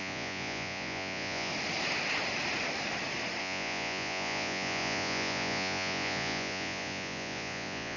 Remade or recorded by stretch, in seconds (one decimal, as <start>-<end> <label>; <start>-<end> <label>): 0.0-1.5 remade; 1.5-3.4 recorded; 3.4-8.0 remade